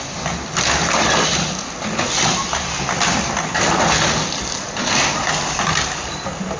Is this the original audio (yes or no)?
yes